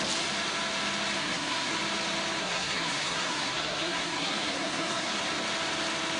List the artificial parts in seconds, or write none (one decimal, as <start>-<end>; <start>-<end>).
1.2-1.8; 2.4-5.2